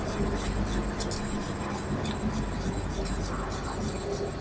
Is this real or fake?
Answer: real